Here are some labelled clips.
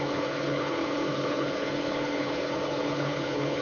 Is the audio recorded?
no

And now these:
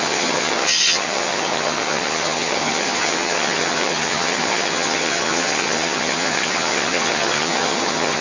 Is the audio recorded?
no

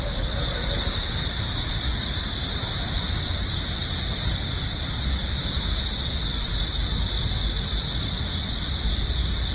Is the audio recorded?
yes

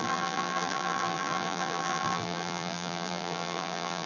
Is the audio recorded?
no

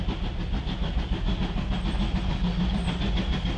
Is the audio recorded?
yes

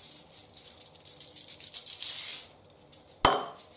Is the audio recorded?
yes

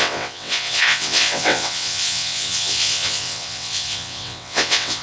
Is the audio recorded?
no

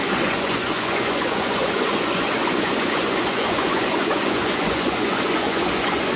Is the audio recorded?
no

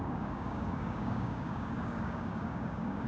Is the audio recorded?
no